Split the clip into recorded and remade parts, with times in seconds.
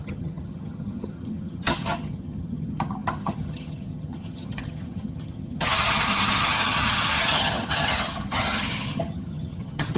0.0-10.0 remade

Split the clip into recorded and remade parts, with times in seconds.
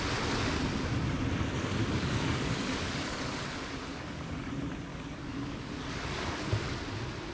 0.0-1.8 recorded; 1.8-3.3 remade; 3.3-3.9 recorded; 3.9-4.5 remade; 4.5-4.9 recorded; 4.9-6.5 remade; 6.5-7.3 recorded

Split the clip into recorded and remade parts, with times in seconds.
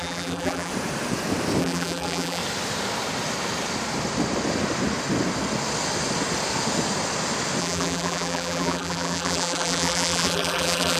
0.0-0.7 remade; 0.7-1.6 recorded; 1.6-2.4 remade; 2.4-7.6 recorded; 7.6-11.0 remade